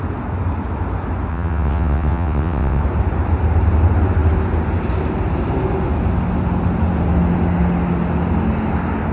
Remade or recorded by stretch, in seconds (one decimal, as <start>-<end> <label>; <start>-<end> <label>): 0.0-1.3 recorded; 1.3-2.8 remade; 2.8-9.1 recorded